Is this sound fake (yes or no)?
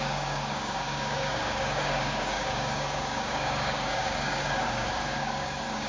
yes